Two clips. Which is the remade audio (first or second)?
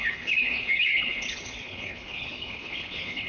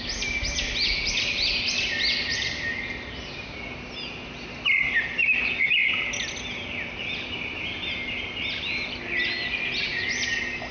first